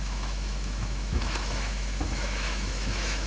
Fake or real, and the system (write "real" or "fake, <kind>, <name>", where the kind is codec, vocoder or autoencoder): fake, autoencoder, DAC-VAE